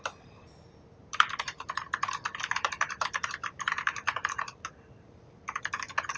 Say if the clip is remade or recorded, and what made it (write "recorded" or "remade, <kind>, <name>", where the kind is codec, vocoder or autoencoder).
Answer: remade, vocoder, BigVGAN v2